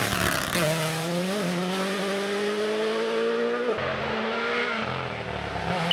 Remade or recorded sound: recorded